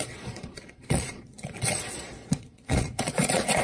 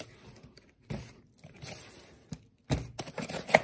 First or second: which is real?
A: second